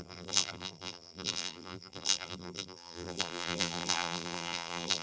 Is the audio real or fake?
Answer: fake